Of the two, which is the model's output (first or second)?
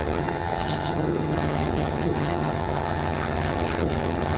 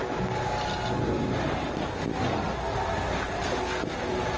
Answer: first